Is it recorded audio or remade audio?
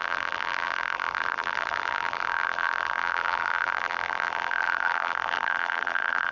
remade